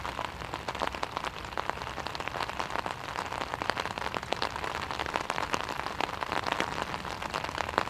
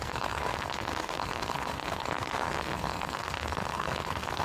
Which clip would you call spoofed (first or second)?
second